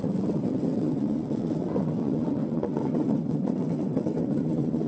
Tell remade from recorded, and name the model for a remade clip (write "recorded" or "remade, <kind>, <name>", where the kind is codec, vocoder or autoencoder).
remade, vocoder, WaveNeXt